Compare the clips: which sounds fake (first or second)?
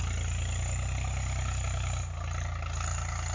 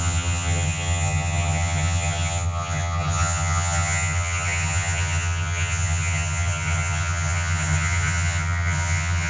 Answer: second